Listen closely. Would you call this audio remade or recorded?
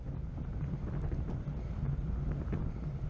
recorded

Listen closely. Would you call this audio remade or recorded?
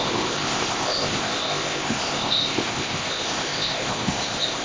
remade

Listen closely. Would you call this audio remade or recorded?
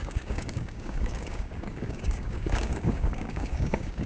remade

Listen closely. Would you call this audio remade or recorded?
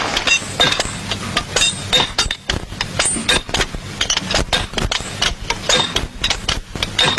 recorded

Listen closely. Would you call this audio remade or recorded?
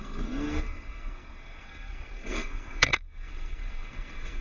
remade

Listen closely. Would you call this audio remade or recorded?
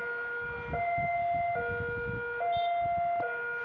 recorded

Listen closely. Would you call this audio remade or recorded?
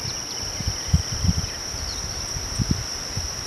recorded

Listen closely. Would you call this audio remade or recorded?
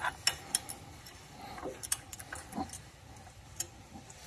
recorded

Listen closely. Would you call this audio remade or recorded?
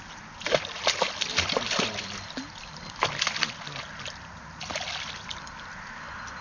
recorded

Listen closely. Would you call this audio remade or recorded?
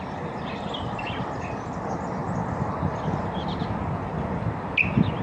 recorded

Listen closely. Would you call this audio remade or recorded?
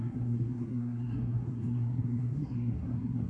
remade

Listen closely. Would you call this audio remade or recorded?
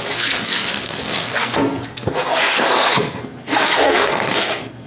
remade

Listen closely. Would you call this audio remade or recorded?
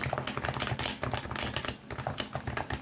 recorded